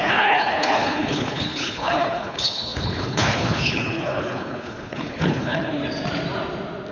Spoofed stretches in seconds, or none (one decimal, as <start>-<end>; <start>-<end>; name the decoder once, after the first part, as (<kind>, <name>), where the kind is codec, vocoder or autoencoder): 0.0-5.8 (codec, HILCodec)